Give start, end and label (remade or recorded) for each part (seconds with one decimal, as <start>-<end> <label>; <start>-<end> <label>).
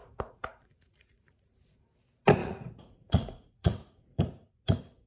0.0-2.0 remade; 2.0-2.4 recorded; 2.4-4.2 remade; 4.2-5.1 recorded